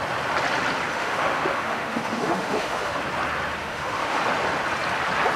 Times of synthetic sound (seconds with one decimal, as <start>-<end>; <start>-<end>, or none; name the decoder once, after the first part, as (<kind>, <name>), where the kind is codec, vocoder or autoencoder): 0.9-3.0 (autoencoder, DAC-VAE); 3.6-4.2